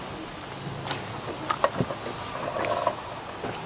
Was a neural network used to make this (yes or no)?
no